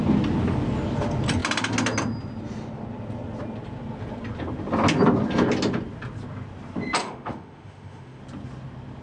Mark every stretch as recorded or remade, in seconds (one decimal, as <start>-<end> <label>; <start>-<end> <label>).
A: 0.0-7.0 recorded; 7.0-8.2 remade; 8.2-9.0 recorded